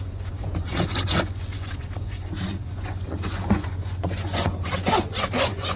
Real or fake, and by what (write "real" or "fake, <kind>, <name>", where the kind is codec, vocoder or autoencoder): fake, vocoder, Vocos